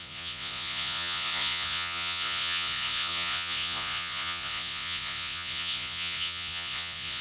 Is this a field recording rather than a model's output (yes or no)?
no